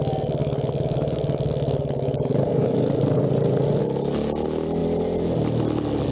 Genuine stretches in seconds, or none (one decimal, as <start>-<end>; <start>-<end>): 0.0-0.4; 3.0-6.1